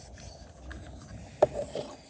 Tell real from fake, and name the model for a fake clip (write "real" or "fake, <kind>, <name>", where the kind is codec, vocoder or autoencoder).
real